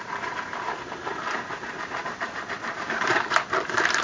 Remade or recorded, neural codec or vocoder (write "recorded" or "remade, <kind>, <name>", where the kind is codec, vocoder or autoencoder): remade, vocoder, BigVGAN v2